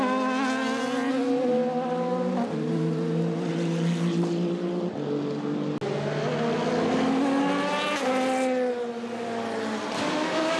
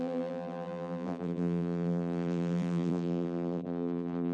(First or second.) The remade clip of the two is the second